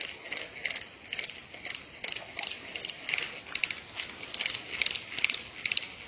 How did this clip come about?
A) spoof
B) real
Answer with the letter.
B